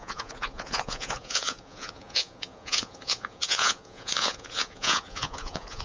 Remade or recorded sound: remade